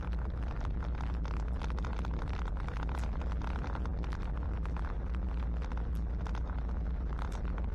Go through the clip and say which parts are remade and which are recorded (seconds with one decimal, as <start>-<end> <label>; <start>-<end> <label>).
0.0-7.7 recorded